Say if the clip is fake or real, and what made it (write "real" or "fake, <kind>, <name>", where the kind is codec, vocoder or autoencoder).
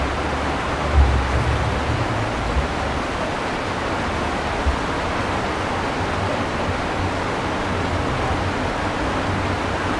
real